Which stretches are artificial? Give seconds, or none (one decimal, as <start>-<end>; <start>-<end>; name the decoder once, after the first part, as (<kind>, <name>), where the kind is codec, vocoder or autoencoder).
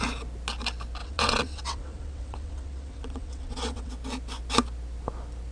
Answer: 1.0-3.9 (vocoder, WaveNeXt)